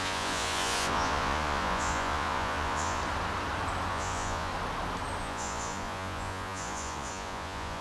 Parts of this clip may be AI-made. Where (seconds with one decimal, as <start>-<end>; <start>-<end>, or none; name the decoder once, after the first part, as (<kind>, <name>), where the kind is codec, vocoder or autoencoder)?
0.0-3.0 (vocoder, Vocos); 3.9-4.5; 5.2-7.8